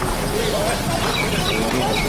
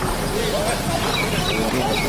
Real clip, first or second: second